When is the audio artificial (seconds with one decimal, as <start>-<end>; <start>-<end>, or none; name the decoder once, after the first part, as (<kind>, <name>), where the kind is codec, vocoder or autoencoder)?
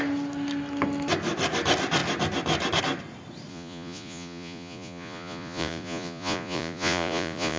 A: 3.5-7.6 (vocoder, Vocos)